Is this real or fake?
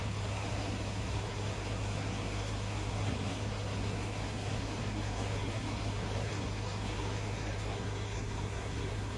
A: fake